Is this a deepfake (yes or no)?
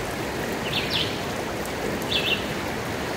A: no